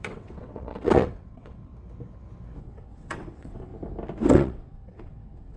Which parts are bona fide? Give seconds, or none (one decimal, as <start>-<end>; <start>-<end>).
1.7-2.6; 3.7-4.3